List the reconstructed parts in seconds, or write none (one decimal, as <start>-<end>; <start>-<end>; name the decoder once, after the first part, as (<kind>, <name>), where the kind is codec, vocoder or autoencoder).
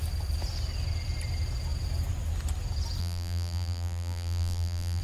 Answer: 3.0-5.0 (vocoder, BigVGAN v2)